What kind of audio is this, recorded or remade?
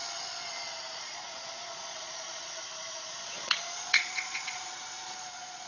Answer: remade